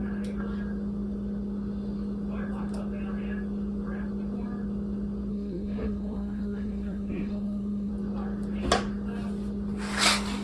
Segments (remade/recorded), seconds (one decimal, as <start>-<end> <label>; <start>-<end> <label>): 0.0-5.3 recorded; 5.3-7.9 remade; 7.9-10.4 recorded